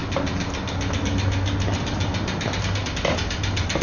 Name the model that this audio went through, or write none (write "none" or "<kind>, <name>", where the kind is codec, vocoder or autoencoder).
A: none